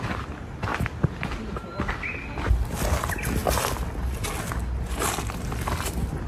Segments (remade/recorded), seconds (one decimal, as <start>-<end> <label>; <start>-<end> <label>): 0.0-6.3 recorded

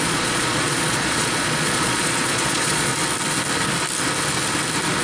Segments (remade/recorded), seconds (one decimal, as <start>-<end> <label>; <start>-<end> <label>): 0.0-2.9 remade; 2.9-5.0 recorded

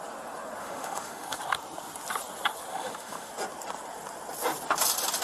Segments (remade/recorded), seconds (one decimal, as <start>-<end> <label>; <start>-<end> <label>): 0.0-0.6 recorded; 0.6-1.4 remade; 1.4-2.7 recorded; 2.7-3.3 remade; 3.3-5.2 recorded

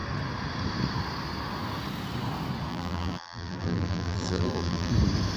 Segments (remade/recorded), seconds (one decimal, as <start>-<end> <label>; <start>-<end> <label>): 0.0-2.7 recorded; 2.7-4.9 remade; 4.9-5.4 recorded

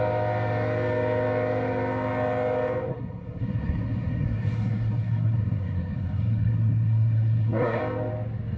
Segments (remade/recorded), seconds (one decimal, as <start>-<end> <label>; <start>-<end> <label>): 0.0-2.9 recorded; 2.9-7.8 remade; 7.8-8.6 recorded

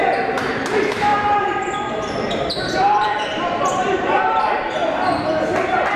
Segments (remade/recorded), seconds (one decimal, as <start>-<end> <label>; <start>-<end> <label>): 0.0-1.1 recorded; 1.1-4.7 remade; 4.7-6.0 recorded

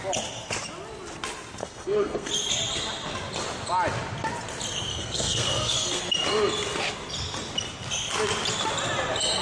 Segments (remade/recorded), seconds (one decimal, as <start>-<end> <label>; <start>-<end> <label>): 0.0-1.6 recorded; 1.6-2.3 remade; 2.3-4.9 recorded; 4.9-6.0 remade; 6.0-9.4 recorded